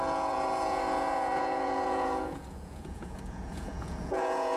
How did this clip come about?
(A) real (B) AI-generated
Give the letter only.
B